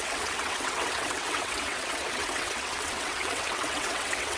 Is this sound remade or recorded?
remade